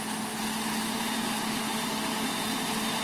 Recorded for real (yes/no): yes